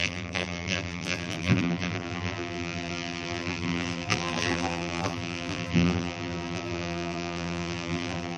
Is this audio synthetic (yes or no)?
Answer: yes